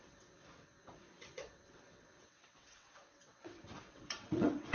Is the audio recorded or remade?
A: remade